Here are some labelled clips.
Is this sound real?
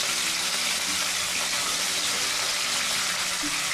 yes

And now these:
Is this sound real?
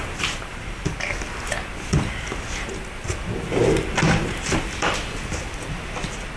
yes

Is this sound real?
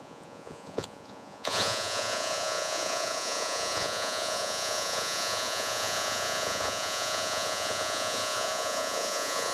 no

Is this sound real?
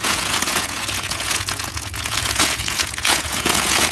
no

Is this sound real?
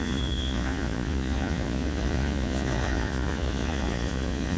no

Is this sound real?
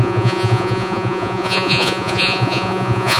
no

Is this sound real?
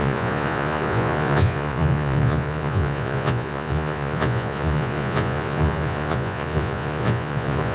no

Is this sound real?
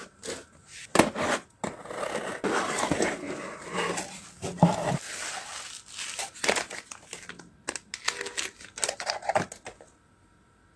yes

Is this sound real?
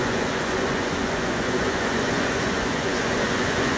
no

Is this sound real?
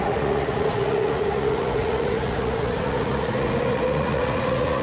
no